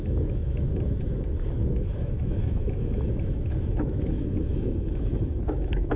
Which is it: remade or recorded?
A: remade